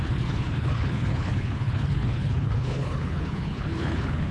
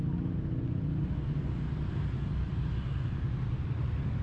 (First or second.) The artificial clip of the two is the first